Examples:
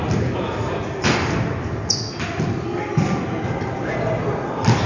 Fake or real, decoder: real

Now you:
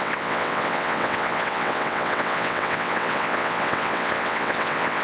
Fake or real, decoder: fake, vocoder, WaveNeXt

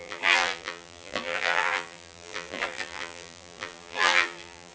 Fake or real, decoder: fake, vocoder, BigVGAN v2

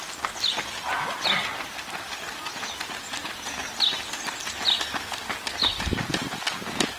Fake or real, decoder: real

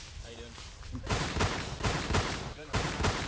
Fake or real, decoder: real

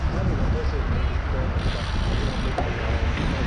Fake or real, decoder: real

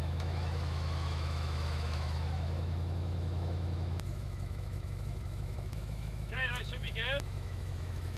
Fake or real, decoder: fake, autoencoder, DAC-VAE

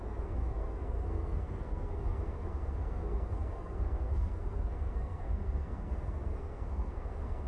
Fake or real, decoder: fake, codec, SNAC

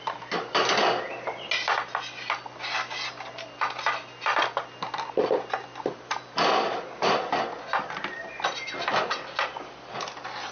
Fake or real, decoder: real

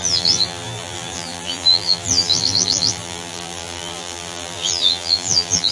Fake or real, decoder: fake, vocoder, BigVGAN v2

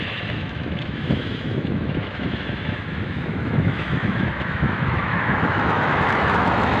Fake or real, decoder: fake, autoencoder, DAC-VAE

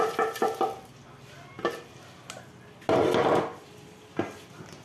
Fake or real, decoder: real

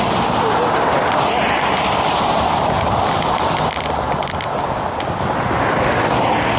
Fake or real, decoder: real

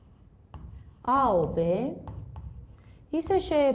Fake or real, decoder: fake, vocoder, BigVGAN v2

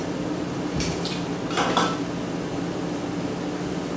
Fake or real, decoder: real